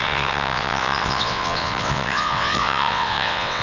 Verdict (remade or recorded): remade